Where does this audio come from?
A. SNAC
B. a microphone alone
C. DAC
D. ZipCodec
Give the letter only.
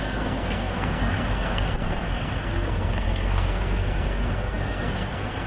A